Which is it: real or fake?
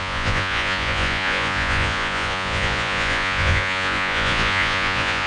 fake